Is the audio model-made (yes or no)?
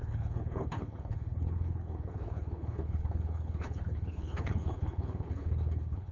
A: yes